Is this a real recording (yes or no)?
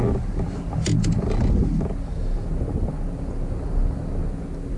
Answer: yes